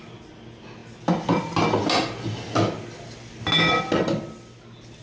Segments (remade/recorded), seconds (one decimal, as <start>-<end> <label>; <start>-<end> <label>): 0.0-5.0 recorded